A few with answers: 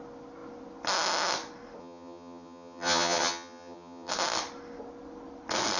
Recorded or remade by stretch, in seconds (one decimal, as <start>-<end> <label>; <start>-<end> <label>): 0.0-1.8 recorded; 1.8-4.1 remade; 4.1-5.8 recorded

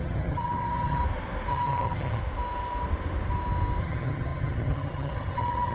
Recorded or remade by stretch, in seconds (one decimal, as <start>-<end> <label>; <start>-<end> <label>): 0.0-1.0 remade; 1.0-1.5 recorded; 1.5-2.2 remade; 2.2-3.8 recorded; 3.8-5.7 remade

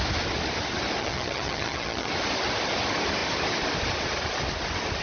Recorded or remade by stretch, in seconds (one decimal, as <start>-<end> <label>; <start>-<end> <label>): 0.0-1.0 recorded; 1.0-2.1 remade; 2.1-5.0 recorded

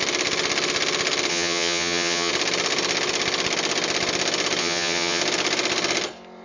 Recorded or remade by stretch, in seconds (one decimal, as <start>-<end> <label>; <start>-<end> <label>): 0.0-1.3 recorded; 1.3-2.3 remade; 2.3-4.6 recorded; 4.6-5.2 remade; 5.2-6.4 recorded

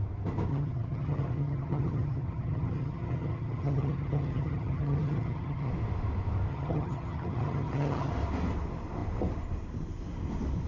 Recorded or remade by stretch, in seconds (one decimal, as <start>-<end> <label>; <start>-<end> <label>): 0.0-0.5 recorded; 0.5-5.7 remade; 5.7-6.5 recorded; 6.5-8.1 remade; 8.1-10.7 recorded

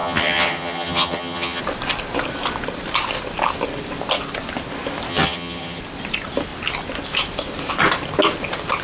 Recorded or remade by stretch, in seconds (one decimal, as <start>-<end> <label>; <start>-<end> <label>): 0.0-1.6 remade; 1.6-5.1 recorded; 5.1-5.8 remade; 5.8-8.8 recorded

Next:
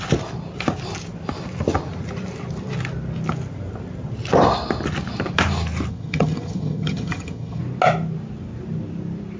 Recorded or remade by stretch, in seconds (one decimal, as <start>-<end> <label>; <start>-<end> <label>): 0.0-5.9 recorded; 5.9-7.6 remade; 7.6-9.4 recorded